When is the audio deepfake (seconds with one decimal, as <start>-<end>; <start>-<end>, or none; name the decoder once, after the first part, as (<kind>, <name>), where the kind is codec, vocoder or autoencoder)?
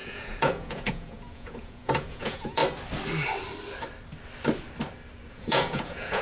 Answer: 0.0-2.6 (vocoder, Vocos); 5.3-6.2